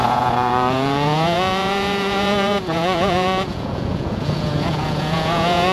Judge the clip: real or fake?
fake